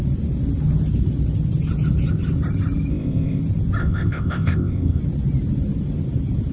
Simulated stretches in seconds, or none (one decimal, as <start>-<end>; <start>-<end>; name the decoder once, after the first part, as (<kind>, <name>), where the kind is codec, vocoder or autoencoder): 2.9-3.4 (codec, ZipCodec); 3.8-5.0